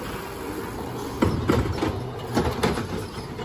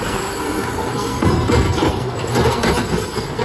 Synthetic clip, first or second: second